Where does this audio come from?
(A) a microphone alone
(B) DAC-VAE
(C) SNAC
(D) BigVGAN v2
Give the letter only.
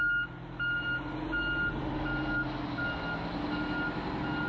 A